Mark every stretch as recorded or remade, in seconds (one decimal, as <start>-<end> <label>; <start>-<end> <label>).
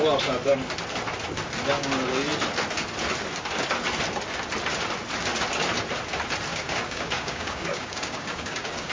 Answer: 0.0-6.5 recorded; 6.5-8.9 remade